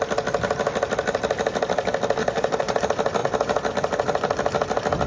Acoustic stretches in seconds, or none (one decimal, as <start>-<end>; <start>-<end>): 0.0-2.2; 2.8-5.1